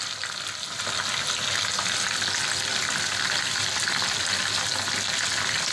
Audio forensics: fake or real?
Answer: real